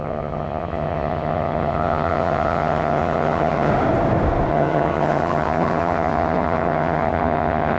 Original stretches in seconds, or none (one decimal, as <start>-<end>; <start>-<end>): 3.7-4.5